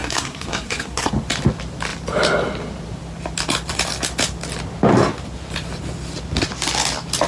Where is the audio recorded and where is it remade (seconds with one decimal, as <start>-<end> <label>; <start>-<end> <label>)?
0.0-1.1 remade; 1.1-7.3 recorded